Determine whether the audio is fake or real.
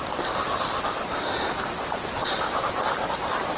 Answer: real